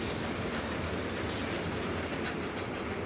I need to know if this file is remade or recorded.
recorded